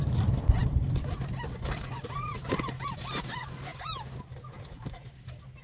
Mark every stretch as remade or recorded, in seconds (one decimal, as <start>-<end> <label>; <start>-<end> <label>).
0.0-5.6 recorded